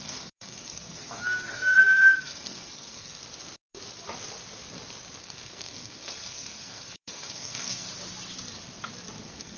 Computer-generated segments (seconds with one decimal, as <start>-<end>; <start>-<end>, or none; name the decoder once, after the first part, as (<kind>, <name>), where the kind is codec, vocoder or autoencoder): 0.0-3.2 (codec, SNAC); 5.2-7.9; 9.2-9.6